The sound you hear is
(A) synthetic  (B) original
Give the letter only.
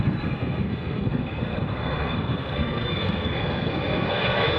A